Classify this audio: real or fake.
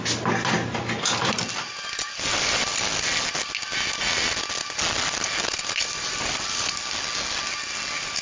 real